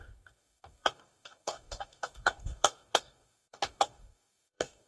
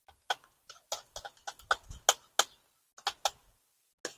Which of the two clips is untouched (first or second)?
second